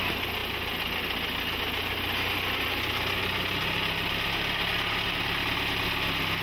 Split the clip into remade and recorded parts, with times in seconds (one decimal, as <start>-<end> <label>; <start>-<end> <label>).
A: 0.0-6.4 recorded